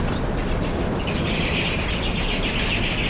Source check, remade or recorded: recorded